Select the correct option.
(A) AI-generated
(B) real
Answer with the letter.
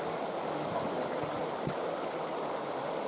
B